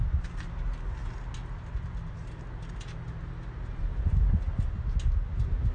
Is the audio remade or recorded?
recorded